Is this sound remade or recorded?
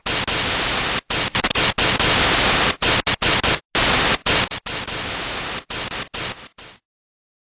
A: recorded